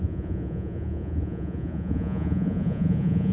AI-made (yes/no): yes